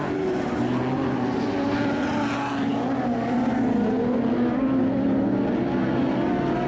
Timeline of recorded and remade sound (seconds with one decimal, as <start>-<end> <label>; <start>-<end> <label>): 0.0-6.7 recorded